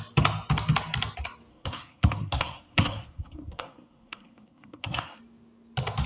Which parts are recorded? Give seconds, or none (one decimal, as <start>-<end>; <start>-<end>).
0.0-1.5; 5.2-6.1